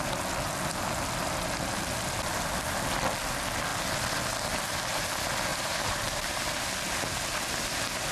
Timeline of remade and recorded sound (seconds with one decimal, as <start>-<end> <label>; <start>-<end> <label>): 0.0-5.5 recorded; 5.5-6.7 remade; 6.7-8.1 recorded